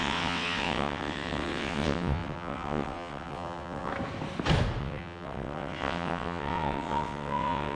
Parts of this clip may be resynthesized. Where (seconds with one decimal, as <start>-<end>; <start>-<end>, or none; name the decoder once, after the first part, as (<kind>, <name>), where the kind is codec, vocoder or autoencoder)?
0.0-3.9 (vocoder, WaveNeXt); 4.8-7.8